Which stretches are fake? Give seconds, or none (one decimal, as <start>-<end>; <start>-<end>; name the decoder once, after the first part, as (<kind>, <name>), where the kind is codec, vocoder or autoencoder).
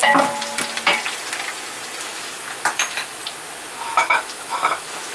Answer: 2.0-3.2 (autoencoder, DAC-VAE); 3.7-5.1